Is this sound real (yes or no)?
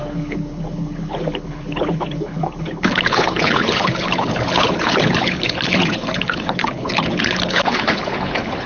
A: no